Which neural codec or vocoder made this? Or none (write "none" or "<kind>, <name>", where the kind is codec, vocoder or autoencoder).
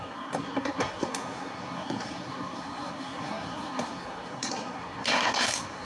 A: codec, SNAC